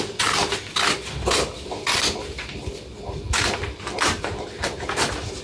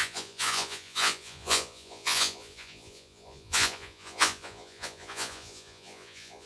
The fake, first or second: second